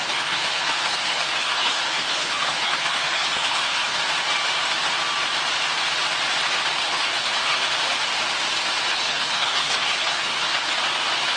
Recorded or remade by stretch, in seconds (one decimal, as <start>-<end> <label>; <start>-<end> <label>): 0.0-4.0 remade; 4.0-6.8 recorded; 6.8-7.6 remade; 7.6-8.9 recorded; 8.9-10.7 remade; 10.7-11.4 recorded